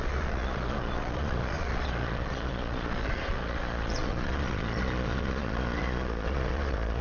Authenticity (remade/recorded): remade